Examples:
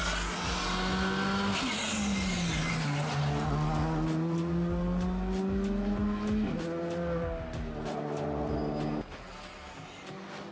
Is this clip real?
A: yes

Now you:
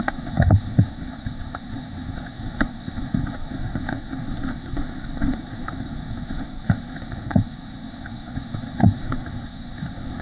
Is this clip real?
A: no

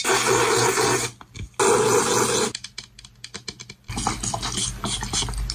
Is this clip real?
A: yes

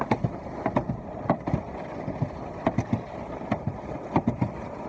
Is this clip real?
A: yes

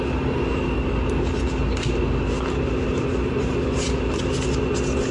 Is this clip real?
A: yes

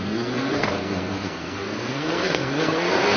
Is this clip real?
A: no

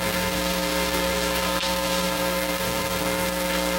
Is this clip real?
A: no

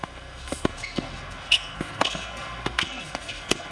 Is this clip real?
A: no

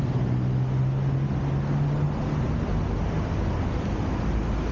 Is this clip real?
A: yes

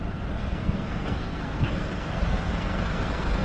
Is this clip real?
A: no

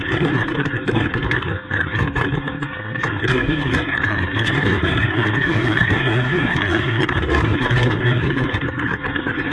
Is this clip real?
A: no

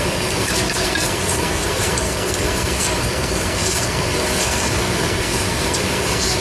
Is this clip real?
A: no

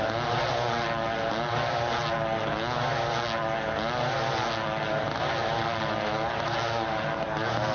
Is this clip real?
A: yes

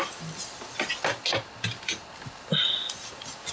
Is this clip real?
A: yes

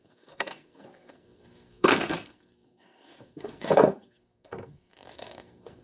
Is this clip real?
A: no